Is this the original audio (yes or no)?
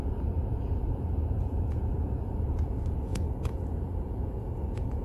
no